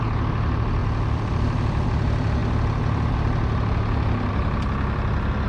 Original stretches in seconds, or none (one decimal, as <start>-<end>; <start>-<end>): 0.0-0.8; 1.3-5.5